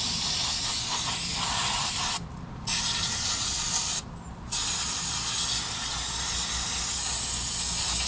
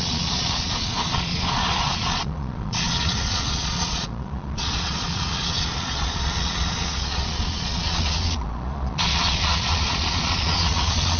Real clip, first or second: first